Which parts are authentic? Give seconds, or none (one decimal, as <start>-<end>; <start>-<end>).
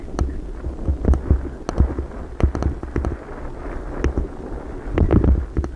0.0-5.8